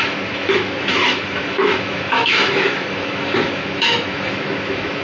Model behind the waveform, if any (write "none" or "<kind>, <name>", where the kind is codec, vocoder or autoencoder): autoencoder, DAC-VAE